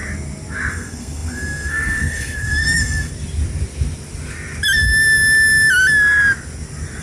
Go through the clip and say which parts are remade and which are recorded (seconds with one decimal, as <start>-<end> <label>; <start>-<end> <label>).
0.0-0.7 recorded; 0.7-3.1 remade; 3.1-7.0 recorded